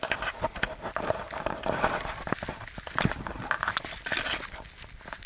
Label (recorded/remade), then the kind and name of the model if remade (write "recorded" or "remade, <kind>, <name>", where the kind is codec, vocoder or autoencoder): recorded